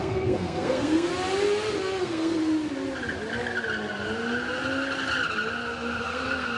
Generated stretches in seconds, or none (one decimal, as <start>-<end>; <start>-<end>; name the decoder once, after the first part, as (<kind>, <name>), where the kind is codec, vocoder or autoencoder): 0.0-1.1 (codec, SNAC); 2.0-2.4; 6.0-6.6